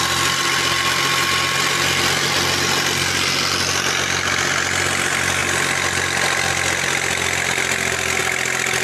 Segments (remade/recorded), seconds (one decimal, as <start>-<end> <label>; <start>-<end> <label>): 0.0-8.8 recorded